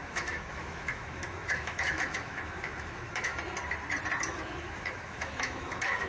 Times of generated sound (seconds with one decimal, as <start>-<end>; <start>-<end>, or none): 0.0-3.3; 4.3-6.1